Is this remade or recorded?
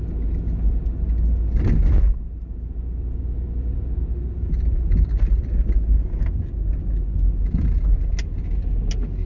recorded